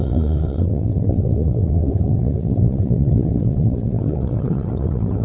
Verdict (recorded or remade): remade